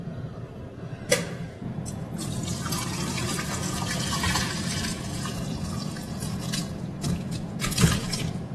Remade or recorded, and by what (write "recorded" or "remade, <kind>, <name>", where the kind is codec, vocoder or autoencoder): remade, vocoder, Vocos